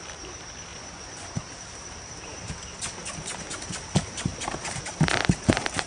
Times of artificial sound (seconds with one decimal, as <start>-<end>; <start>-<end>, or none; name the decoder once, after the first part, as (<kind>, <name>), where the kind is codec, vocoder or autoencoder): 0.7-1.3 (vocoder, Vocos)

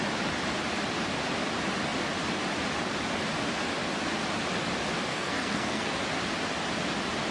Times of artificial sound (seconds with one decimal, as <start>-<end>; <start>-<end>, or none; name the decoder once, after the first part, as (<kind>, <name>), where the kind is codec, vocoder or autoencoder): 5.1-6.0 (codec, SNAC)